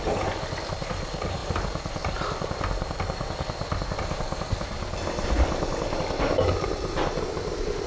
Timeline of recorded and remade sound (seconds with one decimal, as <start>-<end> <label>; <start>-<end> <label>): 0.0-7.9 recorded